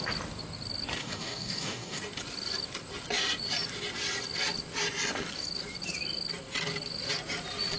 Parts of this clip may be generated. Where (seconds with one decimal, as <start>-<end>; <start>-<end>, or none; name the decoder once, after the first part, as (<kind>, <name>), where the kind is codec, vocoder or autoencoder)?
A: 1.0-2.0 (codec, DAC)